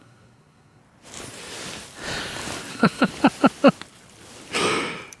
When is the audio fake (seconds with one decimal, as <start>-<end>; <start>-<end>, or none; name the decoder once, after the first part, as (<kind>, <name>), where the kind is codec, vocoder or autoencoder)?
0.0-0.8 (codec, SNAC); 2.7-3.1